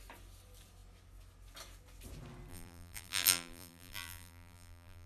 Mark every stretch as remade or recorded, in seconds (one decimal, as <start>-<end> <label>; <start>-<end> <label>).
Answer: 0.0-2.5 recorded; 2.5-5.1 remade